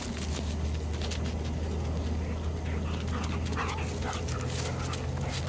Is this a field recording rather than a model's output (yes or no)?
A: yes